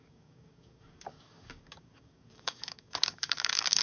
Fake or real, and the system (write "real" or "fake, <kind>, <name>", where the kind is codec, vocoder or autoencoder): fake, codec, DAC